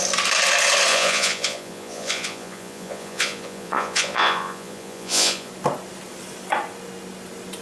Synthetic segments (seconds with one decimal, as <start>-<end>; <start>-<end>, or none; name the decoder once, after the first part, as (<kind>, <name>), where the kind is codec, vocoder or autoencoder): 0.9-5.5 (vocoder, Vocos)